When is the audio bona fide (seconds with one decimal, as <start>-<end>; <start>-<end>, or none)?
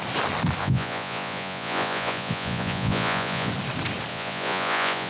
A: 0.0-0.6; 3.5-4.1